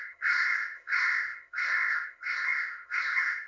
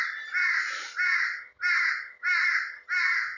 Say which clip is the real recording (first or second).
second